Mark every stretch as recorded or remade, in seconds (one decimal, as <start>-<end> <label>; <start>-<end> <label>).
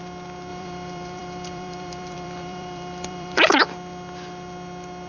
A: 0.0-0.5 recorded; 0.5-3.6 remade; 3.6-5.1 recorded